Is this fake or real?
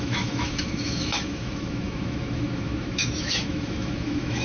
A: fake